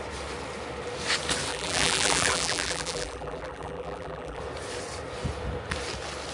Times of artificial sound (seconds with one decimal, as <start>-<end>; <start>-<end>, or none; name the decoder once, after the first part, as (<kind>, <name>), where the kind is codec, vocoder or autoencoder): 1.5-4.4 (vocoder, BigVGAN v2)